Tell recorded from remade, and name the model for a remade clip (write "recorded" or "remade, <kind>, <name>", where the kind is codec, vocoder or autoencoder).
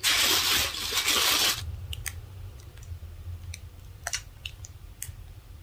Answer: recorded